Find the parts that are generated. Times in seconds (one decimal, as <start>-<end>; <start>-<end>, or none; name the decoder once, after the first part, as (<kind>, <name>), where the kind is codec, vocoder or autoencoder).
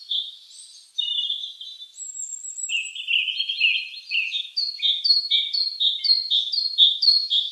0.0-3.2 (vocoder, BigVGAN v2); 5.2-7.5